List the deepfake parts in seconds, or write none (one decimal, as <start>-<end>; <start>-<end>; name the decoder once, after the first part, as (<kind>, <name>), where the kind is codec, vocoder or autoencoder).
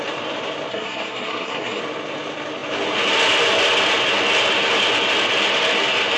0.7-1.8 (codec, SNAC)